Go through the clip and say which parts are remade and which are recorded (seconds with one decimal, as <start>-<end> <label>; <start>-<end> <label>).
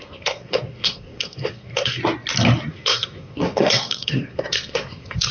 0.0-2.0 remade; 2.0-2.7 recorded; 2.7-5.3 remade